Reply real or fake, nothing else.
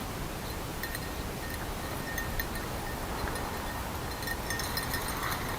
real